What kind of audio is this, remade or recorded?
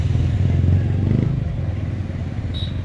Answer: recorded